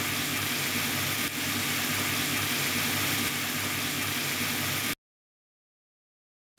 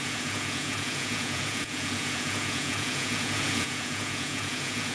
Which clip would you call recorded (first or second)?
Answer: first